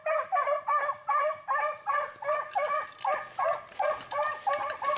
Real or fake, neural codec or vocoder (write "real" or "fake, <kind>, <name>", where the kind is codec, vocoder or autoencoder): real